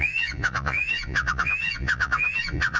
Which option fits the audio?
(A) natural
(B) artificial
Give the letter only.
B